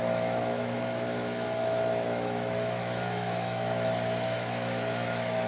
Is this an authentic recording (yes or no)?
no